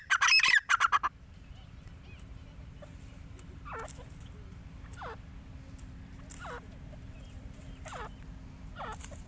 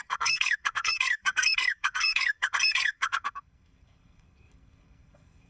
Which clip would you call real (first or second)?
first